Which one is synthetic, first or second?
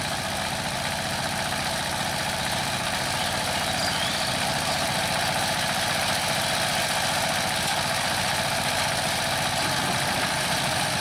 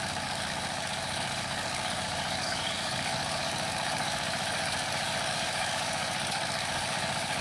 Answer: second